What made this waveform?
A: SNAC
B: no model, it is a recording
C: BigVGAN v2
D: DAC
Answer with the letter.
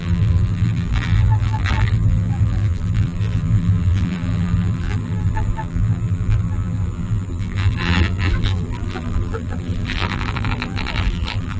C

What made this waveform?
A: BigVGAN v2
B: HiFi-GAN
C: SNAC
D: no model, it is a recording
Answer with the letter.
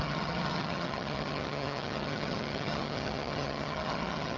B